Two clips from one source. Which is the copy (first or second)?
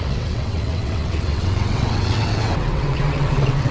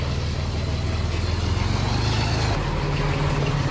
first